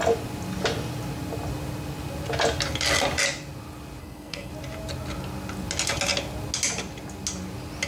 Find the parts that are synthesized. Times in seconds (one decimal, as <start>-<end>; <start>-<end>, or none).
4.0-4.5